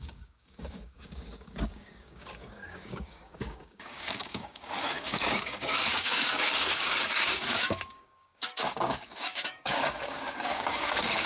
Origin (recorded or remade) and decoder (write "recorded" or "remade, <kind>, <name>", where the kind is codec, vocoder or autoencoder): remade, codec, DAC